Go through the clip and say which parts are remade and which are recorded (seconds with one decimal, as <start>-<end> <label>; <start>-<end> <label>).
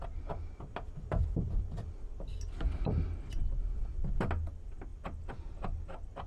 0.0-6.3 recorded